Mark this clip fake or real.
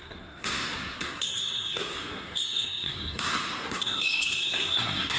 fake